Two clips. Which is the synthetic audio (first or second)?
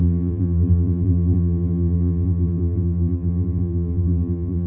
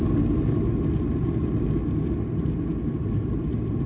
first